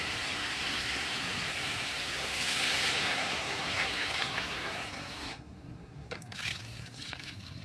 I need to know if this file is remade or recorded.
remade